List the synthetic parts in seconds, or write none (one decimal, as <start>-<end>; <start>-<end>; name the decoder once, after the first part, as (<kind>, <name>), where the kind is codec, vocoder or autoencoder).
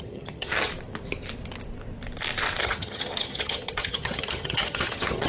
0.0-0.7 (vocoder, HiFi-GAN); 2.6-5.3